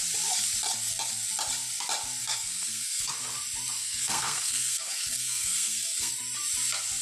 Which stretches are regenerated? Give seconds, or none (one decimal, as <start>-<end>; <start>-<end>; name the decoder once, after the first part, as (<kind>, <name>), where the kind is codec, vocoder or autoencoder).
2.2-3.1 (codec, SNAC); 3.8-6.1